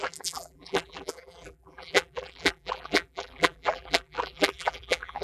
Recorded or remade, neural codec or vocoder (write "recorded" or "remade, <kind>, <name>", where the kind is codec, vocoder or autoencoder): remade, vocoder, BigVGAN v2